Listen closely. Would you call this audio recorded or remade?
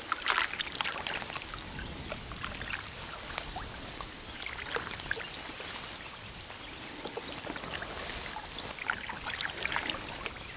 recorded